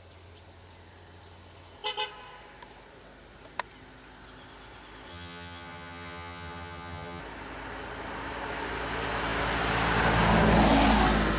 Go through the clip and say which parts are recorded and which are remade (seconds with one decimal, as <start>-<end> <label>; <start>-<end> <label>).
0.0-5.1 recorded; 5.1-7.2 remade; 7.2-11.4 recorded